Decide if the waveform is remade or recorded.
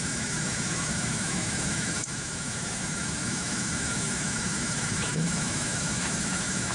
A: remade